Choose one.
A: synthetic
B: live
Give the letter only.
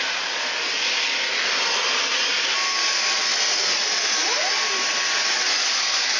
B